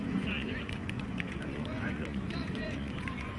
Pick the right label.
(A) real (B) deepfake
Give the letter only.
B